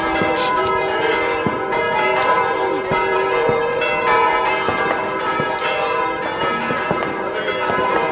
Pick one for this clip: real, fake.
fake